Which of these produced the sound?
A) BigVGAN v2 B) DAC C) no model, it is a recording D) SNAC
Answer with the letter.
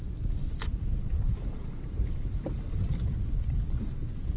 C